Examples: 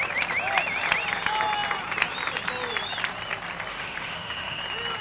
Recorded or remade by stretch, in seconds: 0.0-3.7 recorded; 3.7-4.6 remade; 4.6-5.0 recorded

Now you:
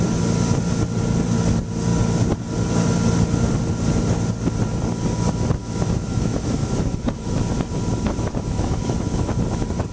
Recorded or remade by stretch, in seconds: 0.0-5.6 recorded; 5.6-9.3 remade; 9.3-9.9 recorded

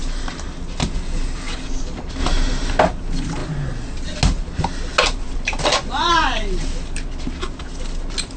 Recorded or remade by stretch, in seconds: 0.0-8.4 recorded

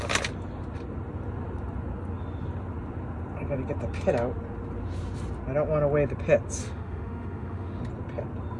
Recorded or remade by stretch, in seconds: 0.0-6.6 recorded; 6.6-7.8 remade; 7.8-8.6 recorded

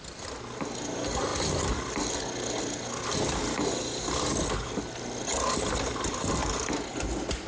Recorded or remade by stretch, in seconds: 0.0-7.5 recorded

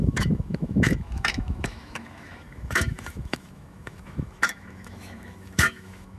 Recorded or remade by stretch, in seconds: 0.0-6.2 remade

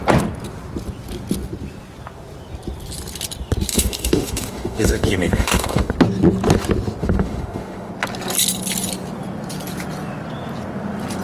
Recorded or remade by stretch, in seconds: 0.0-3.7 recorded; 3.7-5.9 remade; 5.9-7.0 recorded; 7.0-7.9 remade; 7.9-11.2 recorded

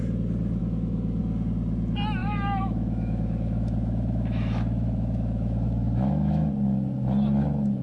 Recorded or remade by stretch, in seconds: 0.0-0.6 recorded; 0.6-1.2 remade; 1.2-2.2 recorded; 2.2-6.5 remade; 6.5-7.8 recorded